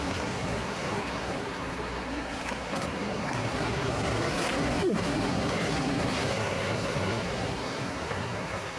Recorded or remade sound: remade